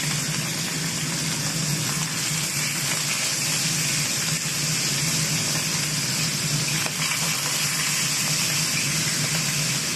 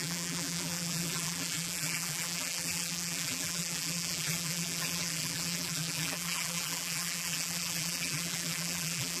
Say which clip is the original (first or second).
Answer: first